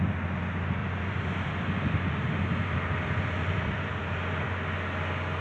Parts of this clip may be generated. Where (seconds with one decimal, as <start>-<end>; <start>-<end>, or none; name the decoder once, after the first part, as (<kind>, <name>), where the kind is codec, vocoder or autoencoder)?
0.8-4.0 (vocoder, BigVGAN v2)